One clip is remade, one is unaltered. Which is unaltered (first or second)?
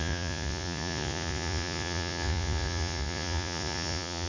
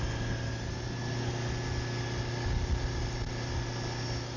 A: second